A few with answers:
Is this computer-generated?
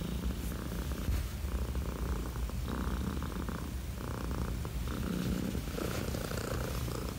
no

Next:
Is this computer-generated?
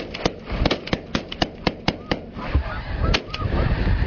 yes